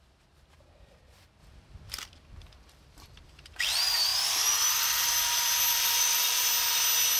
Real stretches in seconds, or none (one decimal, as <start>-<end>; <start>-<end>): 0.0-1.4; 3.6-4.1; 6.5-7.2

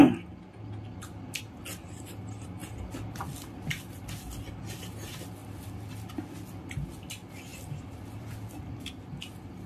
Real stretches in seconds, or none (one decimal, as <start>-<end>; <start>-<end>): 0.0-5.4; 6.1-7.5; 8.9-9.7

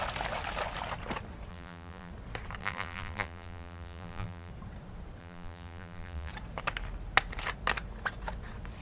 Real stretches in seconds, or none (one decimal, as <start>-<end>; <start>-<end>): 0.0-1.5; 2.1-2.6; 4.5-5.2; 6.3-8.8

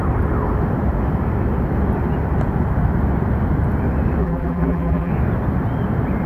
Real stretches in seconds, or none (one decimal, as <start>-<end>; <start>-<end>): 0.0-4.2; 5.1-6.3